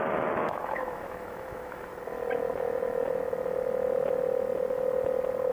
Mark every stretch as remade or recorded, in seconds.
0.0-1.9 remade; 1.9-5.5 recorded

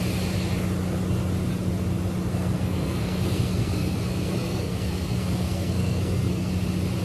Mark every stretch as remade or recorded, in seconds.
0.0-2.3 recorded; 2.3-6.5 remade; 6.5-7.0 recorded

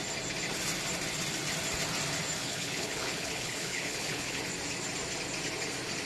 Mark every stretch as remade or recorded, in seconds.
0.0-2.4 recorded; 2.4-4.4 remade; 4.4-6.1 recorded

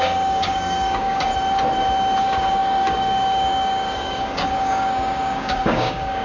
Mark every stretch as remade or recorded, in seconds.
0.0-1.3 remade; 1.3-2.2 recorded; 2.2-6.2 remade

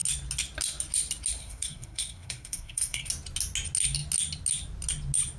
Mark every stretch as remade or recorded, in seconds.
0.0-1.4 recorded; 1.4-3.1 remade; 3.1-5.4 recorded

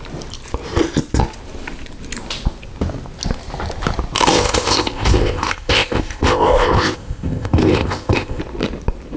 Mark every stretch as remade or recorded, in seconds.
0.0-4.3 recorded; 4.3-8.4 remade; 8.4-9.2 recorded

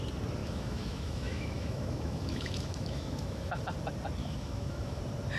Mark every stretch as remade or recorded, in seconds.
0.0-0.4 recorded; 0.4-3.6 remade; 3.6-4.2 recorded; 4.2-5.0 remade; 5.0-5.4 recorded

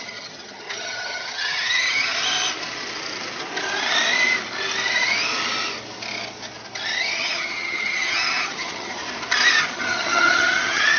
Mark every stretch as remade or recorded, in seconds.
0.0-2.2 remade; 2.2-7.0 recorded; 7.0-9.0 remade; 9.0-9.6 recorded; 9.6-11.0 remade